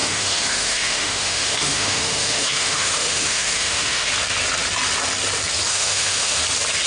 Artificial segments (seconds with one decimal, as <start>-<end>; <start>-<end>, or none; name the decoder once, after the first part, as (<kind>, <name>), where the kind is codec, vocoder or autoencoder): 0.0-4.1 (autoencoder, DAC-VAE); 5.7-6.4